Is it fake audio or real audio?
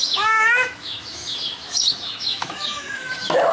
fake